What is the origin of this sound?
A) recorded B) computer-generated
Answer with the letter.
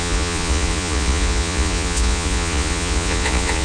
B